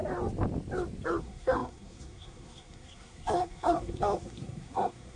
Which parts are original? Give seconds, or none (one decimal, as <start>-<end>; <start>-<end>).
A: 0.0-1.2